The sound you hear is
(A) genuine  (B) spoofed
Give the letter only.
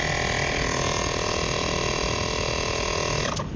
A